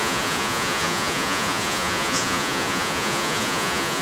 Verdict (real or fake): fake